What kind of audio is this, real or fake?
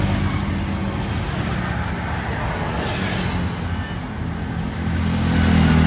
real